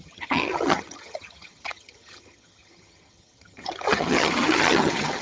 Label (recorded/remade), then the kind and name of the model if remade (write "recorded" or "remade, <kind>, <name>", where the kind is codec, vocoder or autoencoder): remade, vocoder, HiFi-GAN